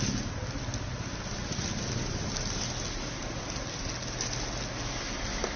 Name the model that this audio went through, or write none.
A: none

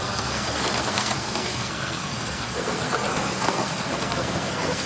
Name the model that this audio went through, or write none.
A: codec, SNAC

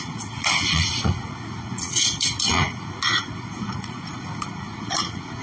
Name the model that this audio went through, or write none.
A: vocoder, Vocos